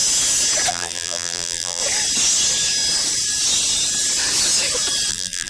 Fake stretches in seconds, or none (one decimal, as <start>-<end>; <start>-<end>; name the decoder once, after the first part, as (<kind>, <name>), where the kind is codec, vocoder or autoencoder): 0.7-1.8 (vocoder, BigVGAN v2); 5.1-5.5